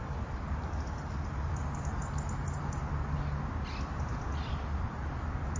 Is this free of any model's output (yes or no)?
yes